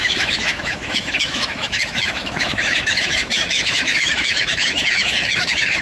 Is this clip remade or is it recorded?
remade